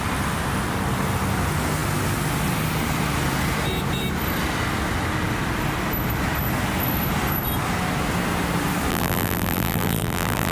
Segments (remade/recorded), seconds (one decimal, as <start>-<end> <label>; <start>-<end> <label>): 0.0-8.9 recorded; 8.9-10.5 remade